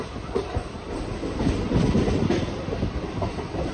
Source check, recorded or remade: recorded